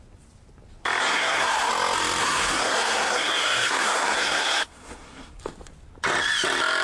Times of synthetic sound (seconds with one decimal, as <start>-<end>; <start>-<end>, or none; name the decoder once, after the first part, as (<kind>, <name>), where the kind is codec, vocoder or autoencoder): 1.0-1.7 (codec, SNAC); 2.2-5.4